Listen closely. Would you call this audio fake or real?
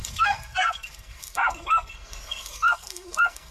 fake